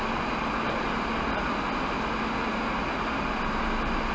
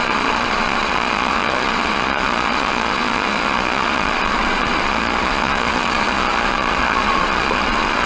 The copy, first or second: second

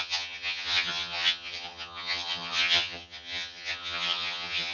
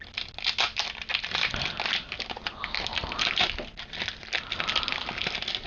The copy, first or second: first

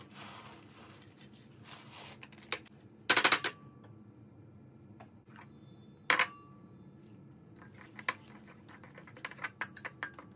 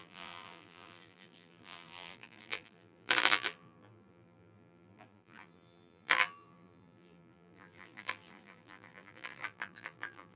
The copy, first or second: second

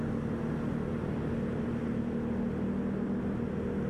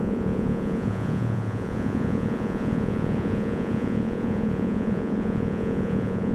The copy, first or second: second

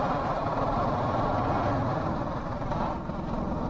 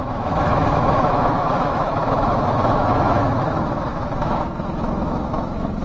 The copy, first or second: second